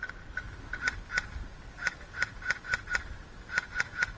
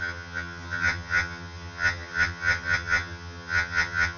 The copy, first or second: second